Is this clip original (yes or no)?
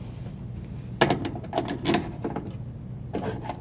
yes